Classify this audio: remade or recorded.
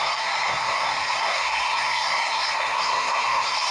remade